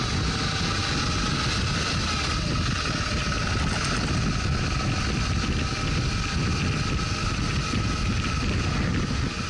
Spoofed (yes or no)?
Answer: no